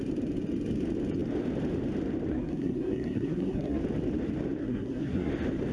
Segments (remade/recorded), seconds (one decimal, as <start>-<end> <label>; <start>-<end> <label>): 0.0-2.3 recorded; 2.3-3.8 remade; 3.8-4.6 recorded; 4.6-5.3 remade; 5.3-5.7 recorded